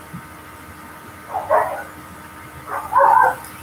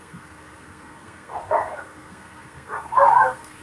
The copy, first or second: second